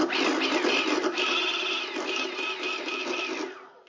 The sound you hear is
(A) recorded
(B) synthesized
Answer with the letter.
A